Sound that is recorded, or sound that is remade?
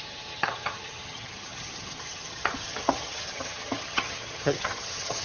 remade